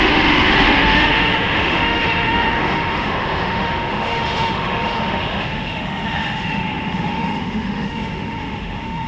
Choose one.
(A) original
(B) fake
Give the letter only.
B